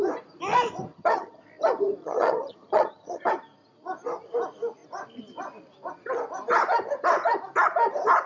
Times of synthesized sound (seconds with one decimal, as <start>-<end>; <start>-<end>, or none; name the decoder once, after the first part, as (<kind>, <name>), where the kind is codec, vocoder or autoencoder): 0.9-1.4 (vocoder, HiFi-GAN); 2.0-3.3